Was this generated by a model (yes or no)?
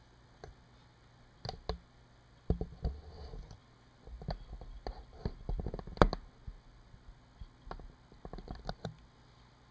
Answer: no